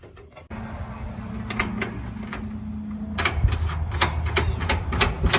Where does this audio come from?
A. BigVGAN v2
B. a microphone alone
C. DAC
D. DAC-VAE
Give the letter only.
B